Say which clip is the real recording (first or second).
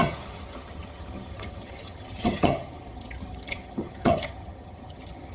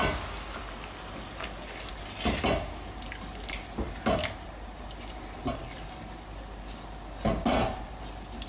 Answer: second